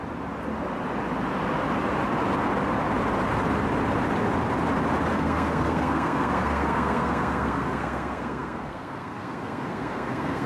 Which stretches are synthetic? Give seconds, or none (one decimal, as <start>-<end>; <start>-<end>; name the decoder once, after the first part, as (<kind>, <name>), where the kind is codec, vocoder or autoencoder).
5.1-10.5 (codec, SNAC)